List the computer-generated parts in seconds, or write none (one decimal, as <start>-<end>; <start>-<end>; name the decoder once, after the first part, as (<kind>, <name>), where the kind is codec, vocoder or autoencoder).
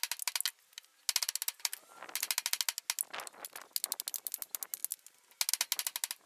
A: none